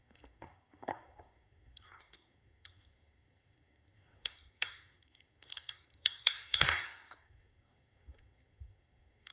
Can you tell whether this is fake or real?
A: fake